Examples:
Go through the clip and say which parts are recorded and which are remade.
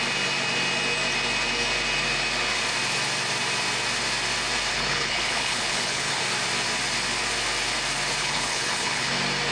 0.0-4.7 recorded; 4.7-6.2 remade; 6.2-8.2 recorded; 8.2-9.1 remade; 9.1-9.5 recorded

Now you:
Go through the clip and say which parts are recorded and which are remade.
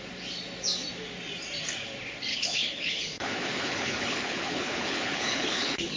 0.0-2.3 recorded; 2.3-6.0 remade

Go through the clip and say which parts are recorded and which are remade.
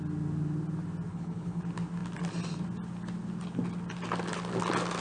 0.0-1.1 recorded; 1.1-1.6 remade; 1.6-5.0 recorded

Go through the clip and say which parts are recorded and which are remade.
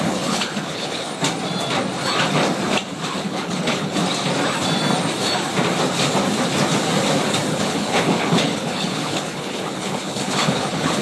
0.0-1.1 remade; 1.1-3.1 recorded; 3.1-4.0 remade; 4.0-7.5 recorded; 7.5-11.0 remade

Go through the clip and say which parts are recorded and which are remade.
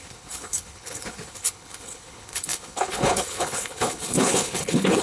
0.0-5.0 remade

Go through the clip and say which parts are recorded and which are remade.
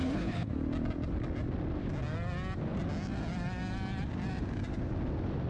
0.0-0.5 remade; 0.5-5.5 recorded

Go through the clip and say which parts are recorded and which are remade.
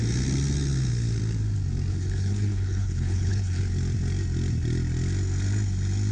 0.0-1.9 recorded; 1.9-3.6 remade; 3.6-6.1 recorded